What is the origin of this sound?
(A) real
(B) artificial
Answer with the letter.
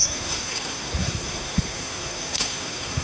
B